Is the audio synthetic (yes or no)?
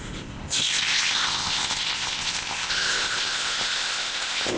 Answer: yes